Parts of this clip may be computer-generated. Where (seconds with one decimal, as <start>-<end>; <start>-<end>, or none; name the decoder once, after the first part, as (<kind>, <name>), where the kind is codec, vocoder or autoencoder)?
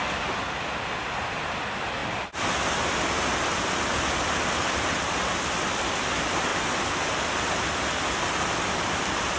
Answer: none